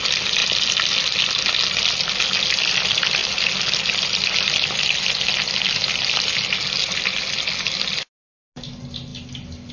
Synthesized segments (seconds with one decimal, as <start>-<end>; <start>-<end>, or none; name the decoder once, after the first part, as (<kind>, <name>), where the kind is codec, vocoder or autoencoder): none